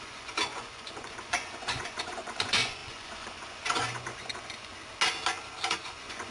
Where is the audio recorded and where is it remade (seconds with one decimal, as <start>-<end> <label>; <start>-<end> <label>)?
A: 0.0-4.7 remade; 4.7-5.7 recorded; 5.7-6.3 remade